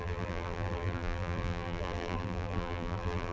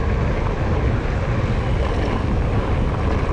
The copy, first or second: first